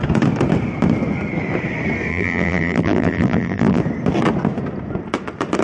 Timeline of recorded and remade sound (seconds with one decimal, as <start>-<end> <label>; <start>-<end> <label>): 0.0-2.1 recorded; 2.1-3.8 remade; 3.8-5.6 recorded